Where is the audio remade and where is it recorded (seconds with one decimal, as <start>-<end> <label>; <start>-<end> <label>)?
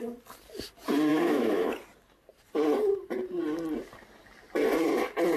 0.0-1.1 recorded; 1.1-1.7 remade; 1.7-5.4 recorded